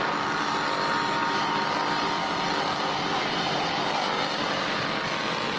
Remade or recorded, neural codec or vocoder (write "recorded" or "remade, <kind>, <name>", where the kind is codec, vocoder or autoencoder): recorded